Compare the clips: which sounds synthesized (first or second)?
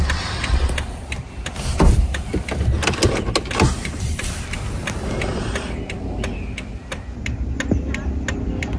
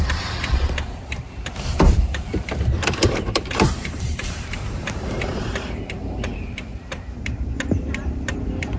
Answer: second